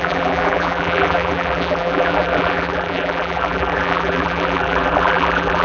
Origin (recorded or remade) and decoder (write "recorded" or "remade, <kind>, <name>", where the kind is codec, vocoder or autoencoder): remade, vocoder, BigVGAN v2